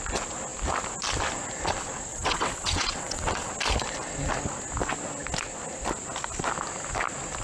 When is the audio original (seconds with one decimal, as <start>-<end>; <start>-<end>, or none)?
0.0-2.1; 3.5-7.4